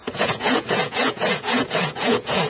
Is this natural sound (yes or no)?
no